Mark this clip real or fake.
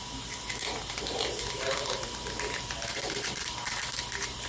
fake